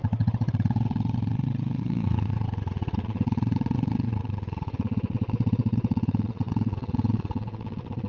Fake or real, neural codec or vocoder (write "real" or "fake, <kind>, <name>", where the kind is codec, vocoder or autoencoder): fake, vocoder, WaveNeXt